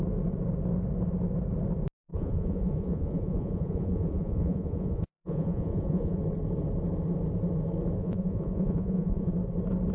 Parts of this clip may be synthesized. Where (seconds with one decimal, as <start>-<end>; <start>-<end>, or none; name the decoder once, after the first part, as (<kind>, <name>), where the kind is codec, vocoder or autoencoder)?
2.1-6.2 (vocoder, Vocos); 8.0-9.3